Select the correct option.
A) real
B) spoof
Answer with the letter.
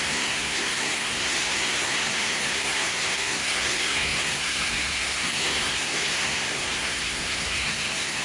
B